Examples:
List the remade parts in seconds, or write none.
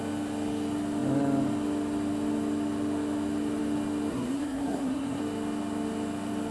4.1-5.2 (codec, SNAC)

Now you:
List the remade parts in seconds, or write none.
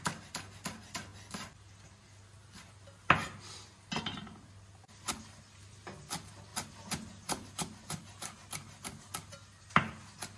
none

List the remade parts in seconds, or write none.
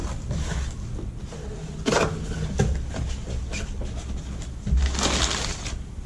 none